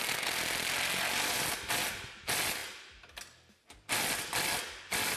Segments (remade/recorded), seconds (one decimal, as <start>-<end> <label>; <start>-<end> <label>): 0.0-5.2 recorded